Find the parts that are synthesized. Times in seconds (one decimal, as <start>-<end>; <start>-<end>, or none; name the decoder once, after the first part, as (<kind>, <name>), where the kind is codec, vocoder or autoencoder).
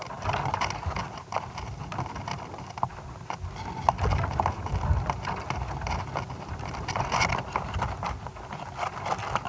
none